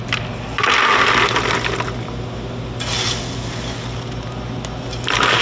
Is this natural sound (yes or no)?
yes